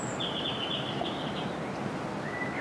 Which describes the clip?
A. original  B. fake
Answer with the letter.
A